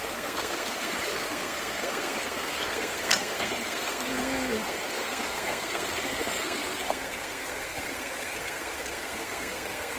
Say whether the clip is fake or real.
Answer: fake